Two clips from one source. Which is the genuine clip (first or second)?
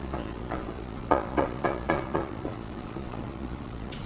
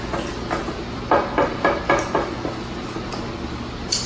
second